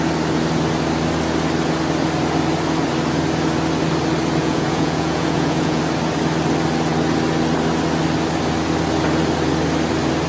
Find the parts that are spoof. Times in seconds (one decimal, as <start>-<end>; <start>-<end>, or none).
4.4-5.8